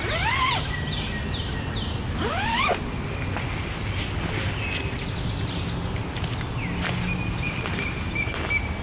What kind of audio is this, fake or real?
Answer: real